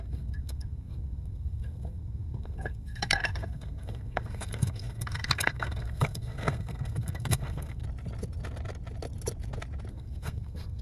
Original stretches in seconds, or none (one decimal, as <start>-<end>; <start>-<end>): 7.8-9.9